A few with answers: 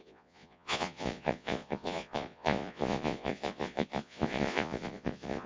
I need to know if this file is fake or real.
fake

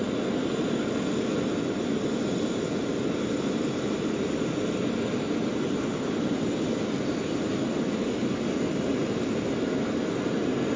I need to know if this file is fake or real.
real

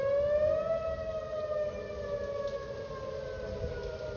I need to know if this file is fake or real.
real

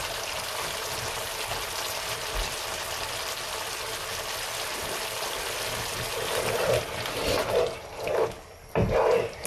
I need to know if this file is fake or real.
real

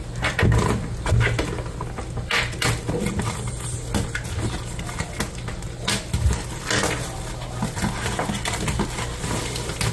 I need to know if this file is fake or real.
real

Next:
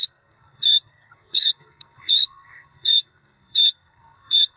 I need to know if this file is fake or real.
fake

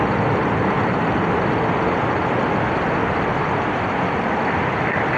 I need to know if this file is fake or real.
real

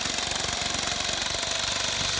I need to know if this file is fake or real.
real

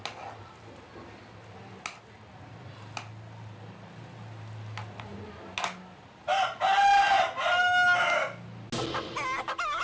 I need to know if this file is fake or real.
real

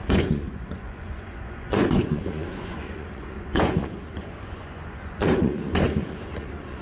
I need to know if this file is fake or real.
fake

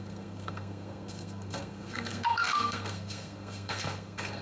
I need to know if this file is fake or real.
fake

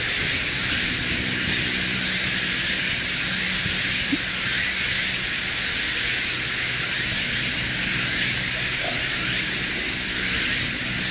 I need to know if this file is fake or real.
real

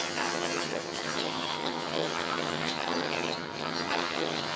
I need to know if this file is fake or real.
fake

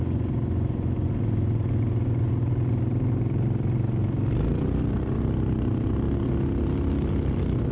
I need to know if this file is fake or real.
real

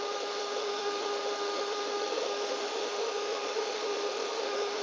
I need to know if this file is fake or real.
fake